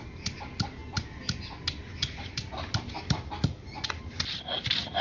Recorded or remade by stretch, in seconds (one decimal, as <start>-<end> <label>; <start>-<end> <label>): 0.0-5.0 recorded